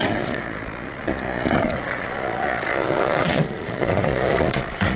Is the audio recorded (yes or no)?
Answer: no